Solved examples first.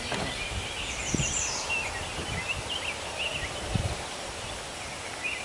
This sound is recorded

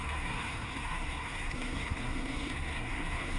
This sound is remade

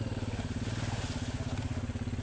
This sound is recorded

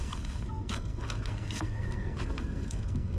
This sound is remade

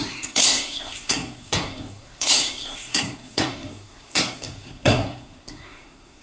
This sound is remade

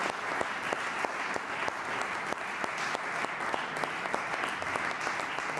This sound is recorded